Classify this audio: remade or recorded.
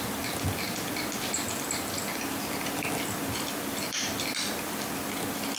recorded